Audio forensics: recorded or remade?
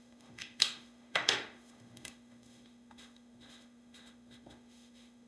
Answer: remade